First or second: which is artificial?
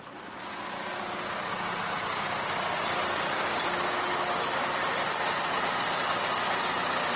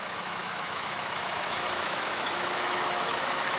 second